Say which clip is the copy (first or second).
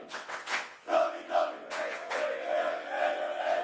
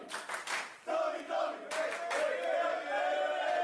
first